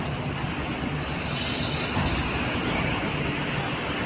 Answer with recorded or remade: recorded